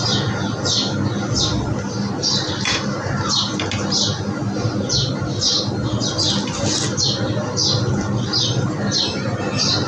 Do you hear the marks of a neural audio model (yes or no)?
no